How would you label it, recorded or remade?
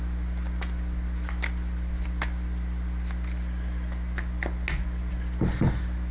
recorded